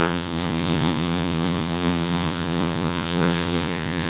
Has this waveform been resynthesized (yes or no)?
yes